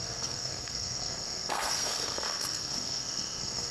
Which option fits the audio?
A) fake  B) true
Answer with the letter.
A